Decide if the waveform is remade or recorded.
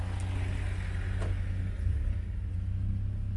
recorded